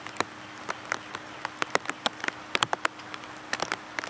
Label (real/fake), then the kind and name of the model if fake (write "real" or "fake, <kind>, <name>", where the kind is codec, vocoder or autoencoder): real